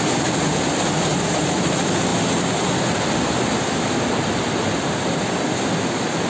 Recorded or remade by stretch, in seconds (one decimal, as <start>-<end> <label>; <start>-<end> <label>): 0.0-1.1 recorded; 1.1-1.7 remade; 1.7-6.3 recorded